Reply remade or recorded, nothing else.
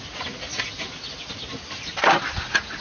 recorded